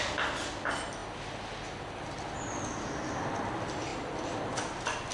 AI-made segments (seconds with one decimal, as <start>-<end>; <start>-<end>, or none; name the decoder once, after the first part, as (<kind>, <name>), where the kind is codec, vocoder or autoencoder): none